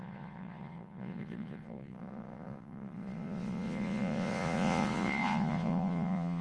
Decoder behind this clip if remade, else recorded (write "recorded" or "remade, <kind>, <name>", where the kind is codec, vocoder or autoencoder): remade, vocoder, Vocos